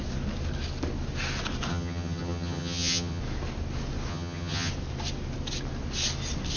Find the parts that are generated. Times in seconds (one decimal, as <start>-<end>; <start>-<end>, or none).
1.7-3.2; 4.1-4.7